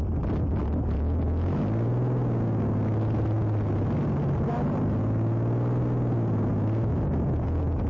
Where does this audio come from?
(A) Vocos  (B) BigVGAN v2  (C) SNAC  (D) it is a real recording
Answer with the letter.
D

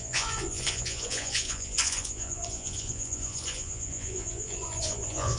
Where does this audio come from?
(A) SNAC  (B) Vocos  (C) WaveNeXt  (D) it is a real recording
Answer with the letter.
B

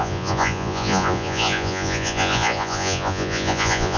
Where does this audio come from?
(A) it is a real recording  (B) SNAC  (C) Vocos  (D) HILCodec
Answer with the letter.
C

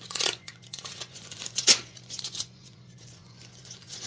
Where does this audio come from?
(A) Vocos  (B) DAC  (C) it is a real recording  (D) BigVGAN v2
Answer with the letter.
A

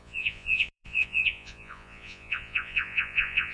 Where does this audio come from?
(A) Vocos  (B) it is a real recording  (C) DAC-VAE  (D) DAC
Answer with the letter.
A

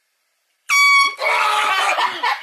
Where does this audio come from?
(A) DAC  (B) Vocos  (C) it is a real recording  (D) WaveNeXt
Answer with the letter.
C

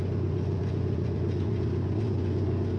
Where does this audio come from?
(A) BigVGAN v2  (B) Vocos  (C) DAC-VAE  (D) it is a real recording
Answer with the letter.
B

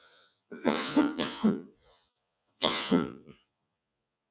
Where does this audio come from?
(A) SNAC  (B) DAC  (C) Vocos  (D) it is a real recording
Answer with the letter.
C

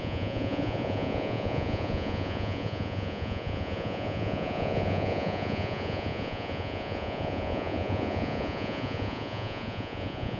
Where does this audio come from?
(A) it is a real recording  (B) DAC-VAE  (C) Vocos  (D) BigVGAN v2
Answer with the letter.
C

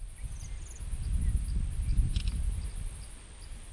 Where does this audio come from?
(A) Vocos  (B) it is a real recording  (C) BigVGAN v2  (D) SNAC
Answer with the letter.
B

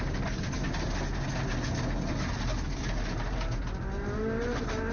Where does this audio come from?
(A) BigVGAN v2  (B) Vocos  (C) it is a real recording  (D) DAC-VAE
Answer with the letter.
C